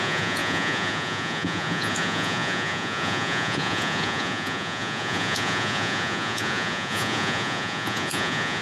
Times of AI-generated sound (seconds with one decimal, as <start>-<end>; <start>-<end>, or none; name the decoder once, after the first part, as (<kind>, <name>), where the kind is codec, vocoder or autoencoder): 0.0-8.6 (vocoder, Vocos)